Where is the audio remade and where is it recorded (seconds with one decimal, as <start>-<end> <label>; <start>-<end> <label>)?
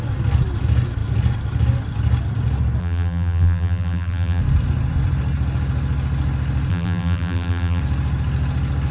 0.0-2.8 recorded; 2.8-4.4 remade; 4.4-6.7 recorded; 6.7-7.8 remade; 7.8-8.9 recorded